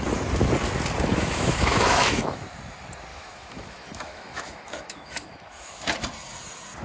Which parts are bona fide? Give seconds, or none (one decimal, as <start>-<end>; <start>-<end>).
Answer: 0.0-1.1; 2.4-3.1; 5.8-6.8